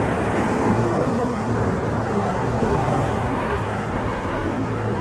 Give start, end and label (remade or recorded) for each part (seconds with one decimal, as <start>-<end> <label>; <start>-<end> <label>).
0.0-0.7 recorded; 0.7-1.5 remade; 1.5-2.0 recorded; 2.0-5.0 remade